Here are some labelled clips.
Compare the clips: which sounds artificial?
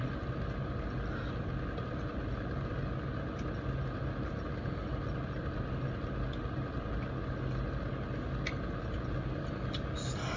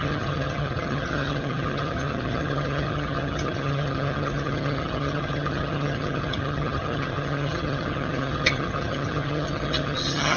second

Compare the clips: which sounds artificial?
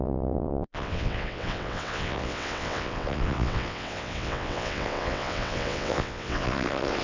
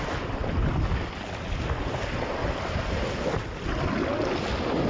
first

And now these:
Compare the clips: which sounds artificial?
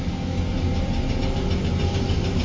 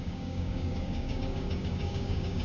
second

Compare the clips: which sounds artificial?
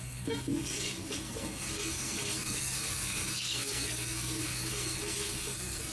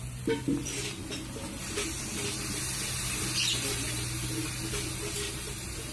first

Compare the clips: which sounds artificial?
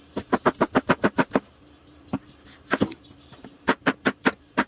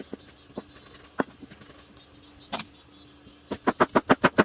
first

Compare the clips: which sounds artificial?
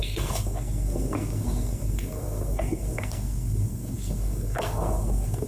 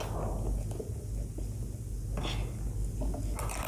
first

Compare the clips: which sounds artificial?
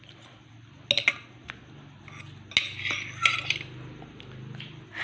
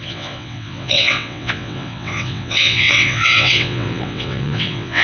second